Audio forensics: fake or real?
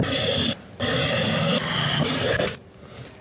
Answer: real